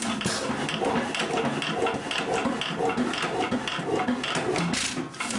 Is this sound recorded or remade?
recorded